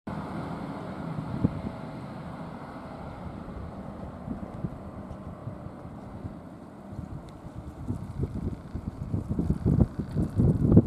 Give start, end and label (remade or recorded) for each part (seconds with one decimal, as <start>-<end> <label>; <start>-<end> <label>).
0.0-10.9 remade